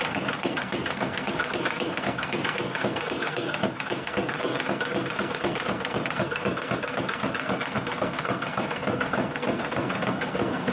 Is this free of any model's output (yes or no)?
no